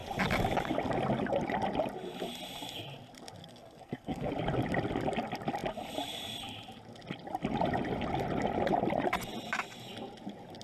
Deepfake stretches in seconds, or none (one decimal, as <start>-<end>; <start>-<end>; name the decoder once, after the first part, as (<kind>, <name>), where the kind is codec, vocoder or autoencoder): 3.4-4.3 (codec, SNAC)